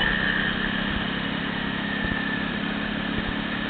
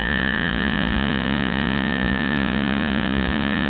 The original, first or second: first